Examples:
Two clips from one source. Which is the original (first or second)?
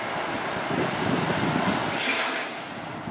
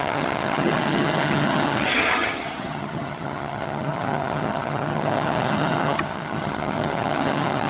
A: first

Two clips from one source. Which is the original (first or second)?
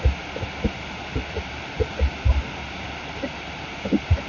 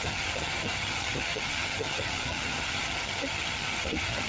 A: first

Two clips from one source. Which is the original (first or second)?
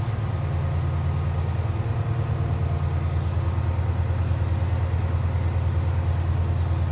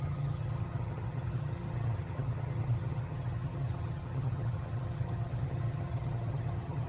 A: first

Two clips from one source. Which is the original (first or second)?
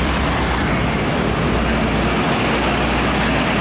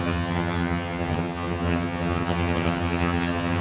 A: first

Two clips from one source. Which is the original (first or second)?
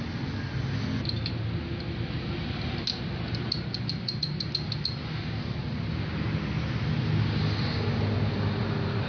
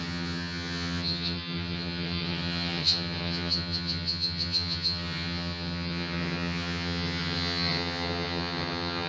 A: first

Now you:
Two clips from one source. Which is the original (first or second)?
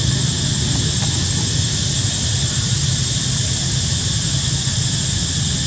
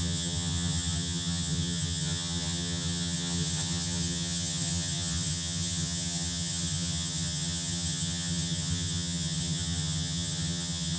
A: first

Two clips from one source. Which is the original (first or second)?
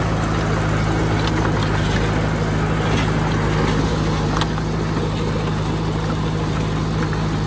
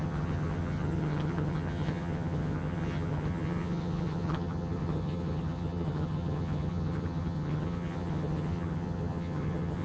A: first